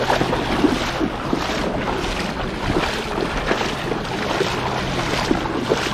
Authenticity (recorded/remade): recorded